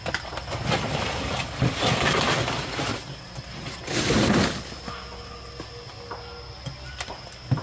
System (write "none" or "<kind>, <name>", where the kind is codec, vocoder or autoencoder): none